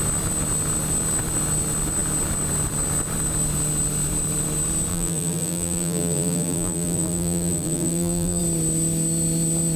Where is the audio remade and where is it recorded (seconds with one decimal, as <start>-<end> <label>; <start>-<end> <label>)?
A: 0.0-4.9 recorded; 4.9-8.4 remade; 8.4-9.8 recorded